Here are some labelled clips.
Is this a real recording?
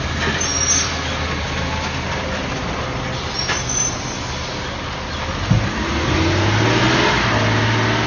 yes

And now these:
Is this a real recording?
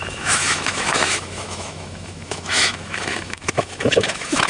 no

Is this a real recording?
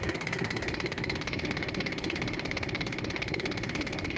no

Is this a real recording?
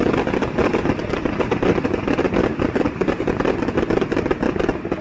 yes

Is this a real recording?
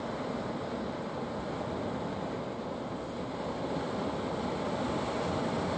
yes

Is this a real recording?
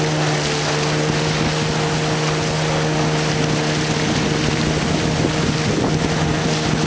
yes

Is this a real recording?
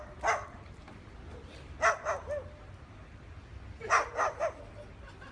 yes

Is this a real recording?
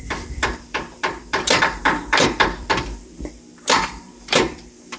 no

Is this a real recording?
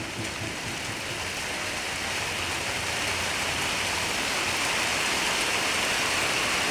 yes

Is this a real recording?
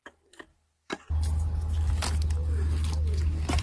yes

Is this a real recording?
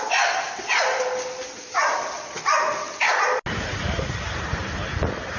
yes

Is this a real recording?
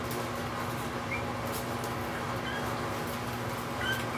yes